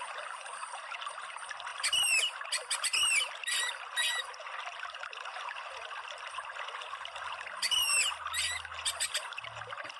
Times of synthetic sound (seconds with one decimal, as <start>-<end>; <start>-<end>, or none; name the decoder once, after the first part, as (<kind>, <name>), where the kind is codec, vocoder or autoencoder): none